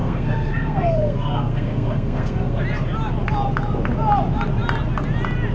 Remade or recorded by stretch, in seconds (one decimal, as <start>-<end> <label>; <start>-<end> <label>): 0.0-2.6 remade; 2.6-5.5 recorded